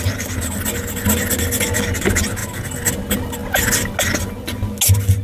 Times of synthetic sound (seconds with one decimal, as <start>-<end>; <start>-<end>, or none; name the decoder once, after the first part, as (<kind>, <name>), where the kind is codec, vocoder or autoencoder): none